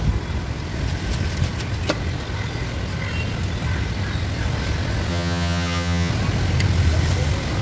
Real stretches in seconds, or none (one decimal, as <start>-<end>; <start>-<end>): 0.0-5.1; 6.1-7.6